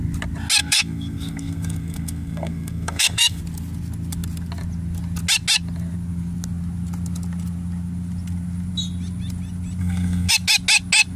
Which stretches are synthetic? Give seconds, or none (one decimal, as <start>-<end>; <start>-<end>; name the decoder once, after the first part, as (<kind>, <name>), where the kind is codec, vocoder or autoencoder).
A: 0.6-3.4 (codec, SNAC); 9.8-10.3